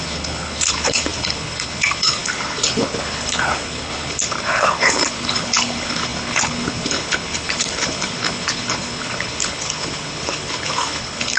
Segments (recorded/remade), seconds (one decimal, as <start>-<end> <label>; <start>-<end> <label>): 0.0-11.4 remade